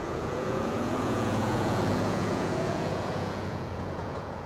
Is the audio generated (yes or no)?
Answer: yes